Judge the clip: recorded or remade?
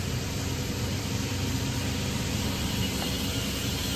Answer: remade